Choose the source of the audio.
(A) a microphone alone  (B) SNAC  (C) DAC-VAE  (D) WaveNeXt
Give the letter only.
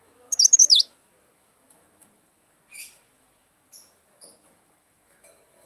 C